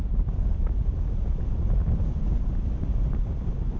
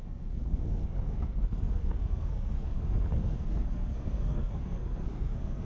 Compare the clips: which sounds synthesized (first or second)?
second